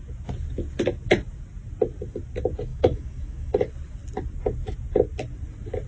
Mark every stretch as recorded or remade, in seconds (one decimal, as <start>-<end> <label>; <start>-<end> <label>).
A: 0.0-2.7 recorded; 2.7-3.6 remade; 3.6-5.9 recorded